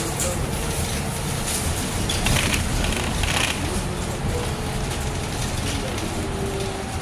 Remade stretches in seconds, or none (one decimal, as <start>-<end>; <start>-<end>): 0.0-1.1; 2.3-2.7